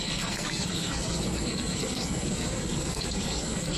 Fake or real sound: fake